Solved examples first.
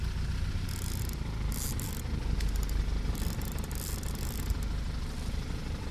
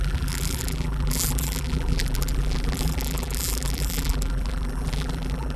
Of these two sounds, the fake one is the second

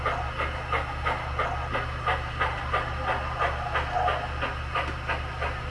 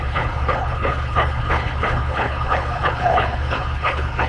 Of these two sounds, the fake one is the second